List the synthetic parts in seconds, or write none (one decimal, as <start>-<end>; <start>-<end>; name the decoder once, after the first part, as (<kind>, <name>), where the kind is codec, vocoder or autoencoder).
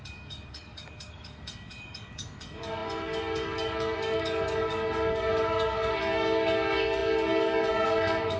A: 0.0-8.4 (codec, DAC)